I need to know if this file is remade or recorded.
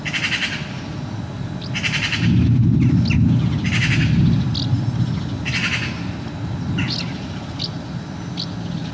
recorded